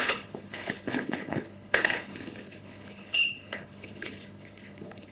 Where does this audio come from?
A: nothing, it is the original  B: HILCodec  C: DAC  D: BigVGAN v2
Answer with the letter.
B